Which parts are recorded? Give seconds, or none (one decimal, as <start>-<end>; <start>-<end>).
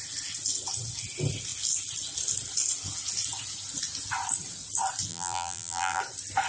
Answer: 0.0-5.1; 6.0-6.5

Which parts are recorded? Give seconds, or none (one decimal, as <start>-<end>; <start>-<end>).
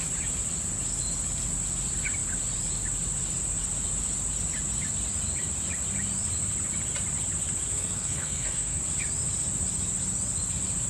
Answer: 0.0-7.7; 8.8-10.9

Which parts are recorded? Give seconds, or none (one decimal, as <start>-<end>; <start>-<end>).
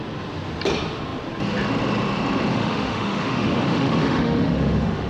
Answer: 0.0-2.5